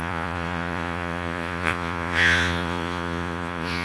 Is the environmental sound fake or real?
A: fake